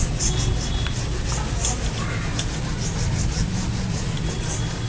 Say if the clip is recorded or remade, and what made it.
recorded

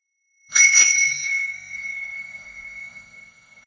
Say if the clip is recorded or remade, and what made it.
remade, codec, SNAC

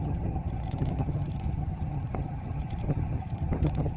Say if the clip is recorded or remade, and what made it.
remade, vocoder, HiFi-GAN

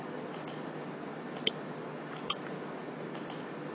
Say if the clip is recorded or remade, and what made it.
recorded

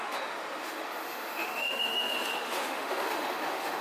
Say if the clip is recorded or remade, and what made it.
remade, autoencoder, DAC-VAE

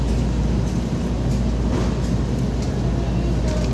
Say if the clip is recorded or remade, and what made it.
recorded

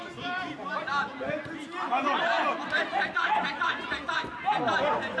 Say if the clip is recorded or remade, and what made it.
recorded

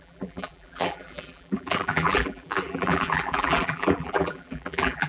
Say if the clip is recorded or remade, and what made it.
remade, vocoder, BigVGAN v2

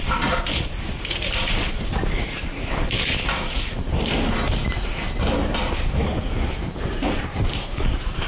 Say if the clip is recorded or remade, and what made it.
remade, vocoder, BigVGAN v2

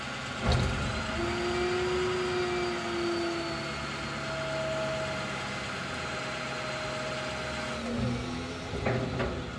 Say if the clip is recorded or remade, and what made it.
recorded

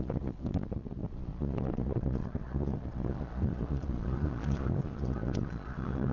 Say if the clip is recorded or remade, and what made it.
remade, vocoder, Vocos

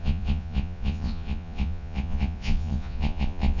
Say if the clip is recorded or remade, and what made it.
remade, vocoder, Vocos